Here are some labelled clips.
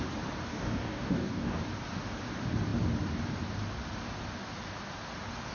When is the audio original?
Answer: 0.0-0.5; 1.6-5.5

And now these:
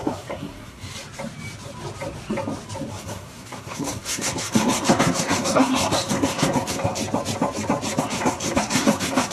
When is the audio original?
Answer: 0.9-2.9; 7.0-8.0

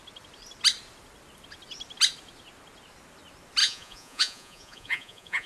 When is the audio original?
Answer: 0.0-3.6

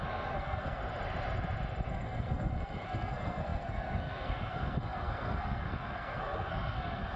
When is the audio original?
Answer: 0.8-1.9

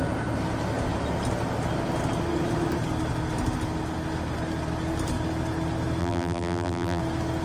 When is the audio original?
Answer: 0.0-6.0; 7.0-7.4

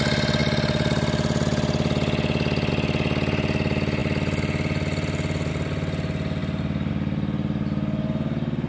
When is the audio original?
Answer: 0.0-8.7

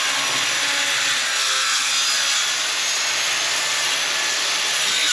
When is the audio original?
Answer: 0.0-1.4; 1.9-5.1

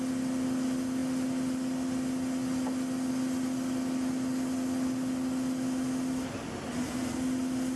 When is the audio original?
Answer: 0.0-7.8